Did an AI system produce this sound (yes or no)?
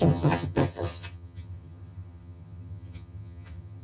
yes